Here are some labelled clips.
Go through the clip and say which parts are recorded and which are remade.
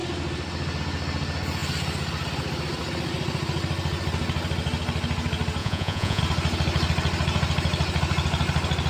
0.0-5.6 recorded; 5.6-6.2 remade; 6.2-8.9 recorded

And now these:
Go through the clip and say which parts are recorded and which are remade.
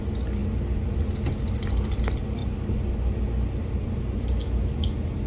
0.0-5.3 recorded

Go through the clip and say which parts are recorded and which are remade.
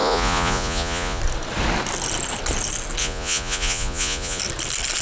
0.0-1.2 remade; 1.2-3.0 recorded; 3.0-4.4 remade; 4.4-5.0 recorded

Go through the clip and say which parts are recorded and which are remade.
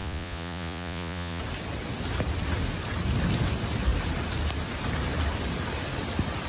0.0-1.4 remade; 1.4-6.5 recorded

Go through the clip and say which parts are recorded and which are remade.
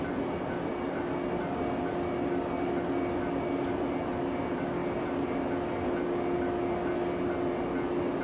0.0-8.2 recorded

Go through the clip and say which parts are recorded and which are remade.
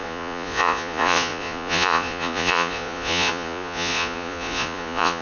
0.0-5.2 remade